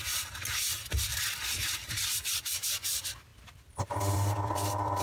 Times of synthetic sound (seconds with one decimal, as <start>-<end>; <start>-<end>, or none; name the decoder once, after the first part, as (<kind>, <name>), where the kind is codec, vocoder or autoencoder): 1.1-1.9 (vocoder, BigVGAN v2); 3.3-5.0